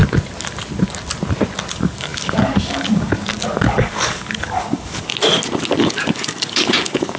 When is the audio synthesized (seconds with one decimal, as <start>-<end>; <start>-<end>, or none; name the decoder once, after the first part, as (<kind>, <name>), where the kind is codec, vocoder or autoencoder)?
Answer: 1.7-5.1 (codec, DAC); 5.8-7.2